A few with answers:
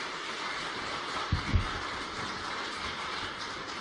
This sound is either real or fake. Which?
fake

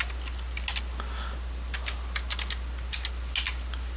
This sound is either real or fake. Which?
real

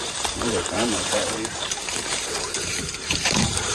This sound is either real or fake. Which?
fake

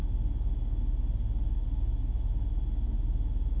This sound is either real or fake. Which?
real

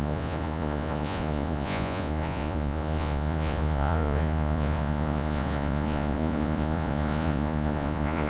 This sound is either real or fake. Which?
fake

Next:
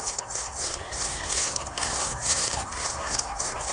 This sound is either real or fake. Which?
fake